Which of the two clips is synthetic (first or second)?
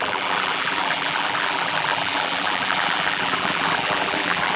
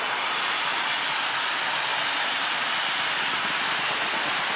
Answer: first